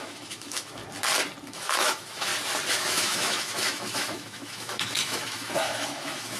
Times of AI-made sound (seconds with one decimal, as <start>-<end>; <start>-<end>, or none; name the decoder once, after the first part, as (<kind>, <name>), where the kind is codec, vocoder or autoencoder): 0.0-0.8 (autoencoder, DAC-VAE); 1.4-2.3; 2.8-6.4